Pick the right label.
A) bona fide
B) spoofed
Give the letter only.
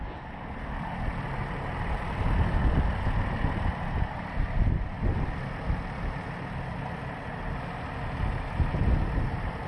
A